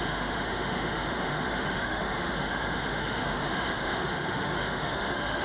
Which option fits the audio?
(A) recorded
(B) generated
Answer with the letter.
B